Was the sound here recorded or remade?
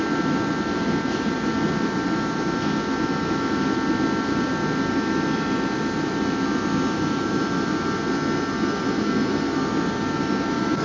recorded